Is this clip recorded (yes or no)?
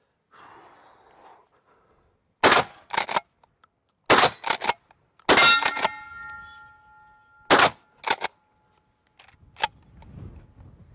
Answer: yes